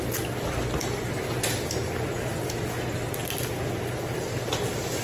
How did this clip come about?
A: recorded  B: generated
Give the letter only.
A